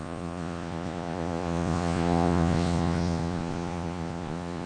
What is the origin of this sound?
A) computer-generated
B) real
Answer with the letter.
A